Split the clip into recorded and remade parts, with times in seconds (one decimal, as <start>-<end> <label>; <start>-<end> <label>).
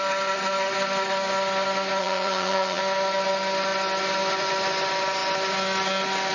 0.0-2.0 recorded; 2.0-2.8 remade; 2.8-6.3 recorded